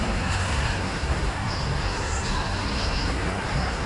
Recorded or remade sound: remade